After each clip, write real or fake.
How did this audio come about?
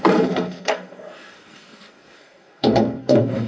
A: fake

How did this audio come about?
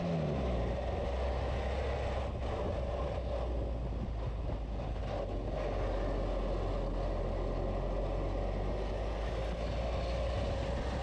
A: real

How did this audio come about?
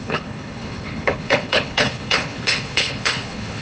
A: fake